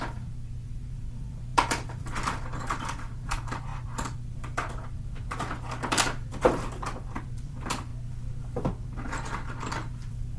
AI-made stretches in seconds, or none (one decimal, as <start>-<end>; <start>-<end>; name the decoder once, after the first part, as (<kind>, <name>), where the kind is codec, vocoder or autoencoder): 0.0-7.9 (vocoder, BigVGAN v2); 9.6-10.4